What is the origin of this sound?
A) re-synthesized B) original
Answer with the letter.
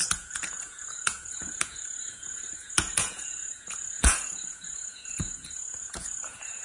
A